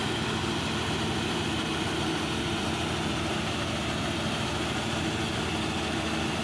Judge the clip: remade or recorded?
recorded